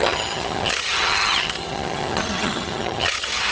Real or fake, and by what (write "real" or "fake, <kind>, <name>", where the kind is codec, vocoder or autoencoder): fake, vocoder, HiFi-GAN